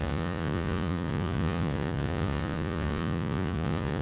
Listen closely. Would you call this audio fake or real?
fake